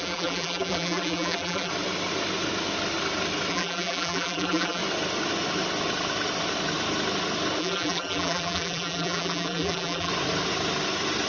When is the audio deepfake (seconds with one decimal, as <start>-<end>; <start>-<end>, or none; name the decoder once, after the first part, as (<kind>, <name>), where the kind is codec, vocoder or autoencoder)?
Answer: 0.0-1.7 (vocoder, BigVGAN v2); 3.5-4.8; 7.6-10.1